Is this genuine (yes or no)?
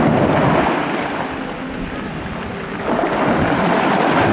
yes